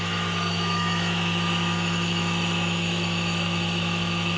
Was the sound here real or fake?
fake